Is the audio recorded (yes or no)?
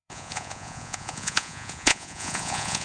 no